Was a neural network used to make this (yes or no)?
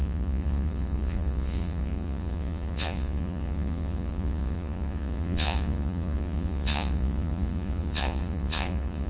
yes